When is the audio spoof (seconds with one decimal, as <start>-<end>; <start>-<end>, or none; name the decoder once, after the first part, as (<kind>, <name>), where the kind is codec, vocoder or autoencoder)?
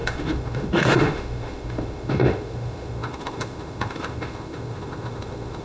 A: 0.0-5.6 (autoencoder, DAC-VAE)